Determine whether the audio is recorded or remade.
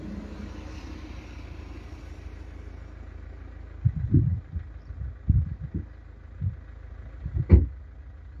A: recorded